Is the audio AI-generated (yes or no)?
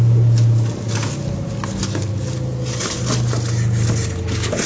no